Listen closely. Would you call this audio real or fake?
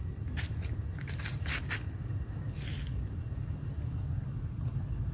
real